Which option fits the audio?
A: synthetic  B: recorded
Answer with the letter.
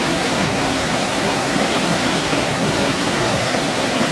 A